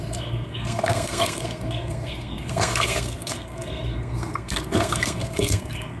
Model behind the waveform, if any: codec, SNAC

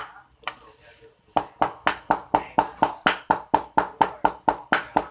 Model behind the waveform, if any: none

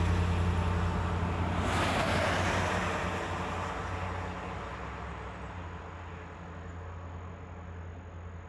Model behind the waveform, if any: none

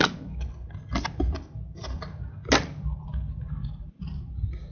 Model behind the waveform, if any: none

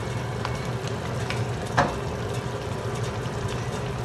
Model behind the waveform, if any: none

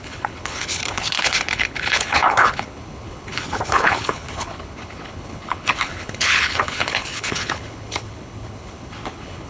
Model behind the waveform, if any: codec, HILCodec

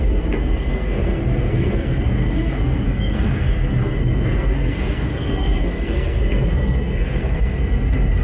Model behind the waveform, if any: codec, SNAC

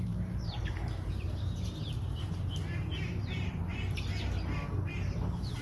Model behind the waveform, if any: vocoder, BigVGAN v2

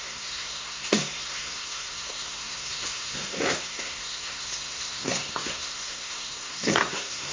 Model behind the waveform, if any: codec, SNAC